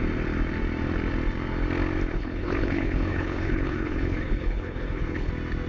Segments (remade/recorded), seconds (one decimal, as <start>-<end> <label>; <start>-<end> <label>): 0.0-2.1 recorded; 2.1-5.3 remade; 5.3-5.7 recorded